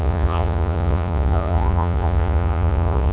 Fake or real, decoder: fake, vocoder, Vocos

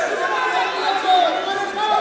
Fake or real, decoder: real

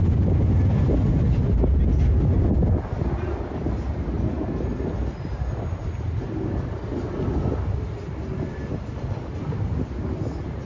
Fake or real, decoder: real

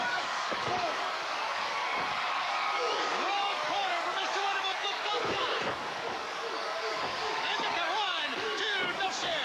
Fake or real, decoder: fake, codec, DAC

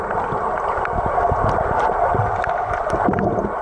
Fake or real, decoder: real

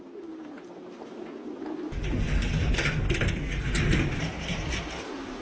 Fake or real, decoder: real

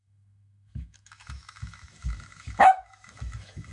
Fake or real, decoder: fake, autoencoder, DAC-VAE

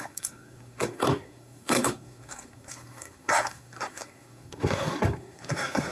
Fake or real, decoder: fake, codec, SNAC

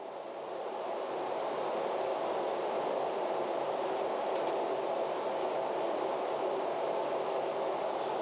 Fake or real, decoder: real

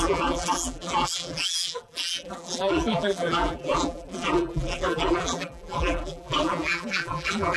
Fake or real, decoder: fake, vocoder, BigVGAN v2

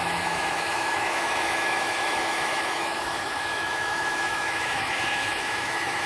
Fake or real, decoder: fake, autoencoder, DAC-VAE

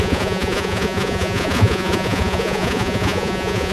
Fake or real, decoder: fake, vocoder, Vocos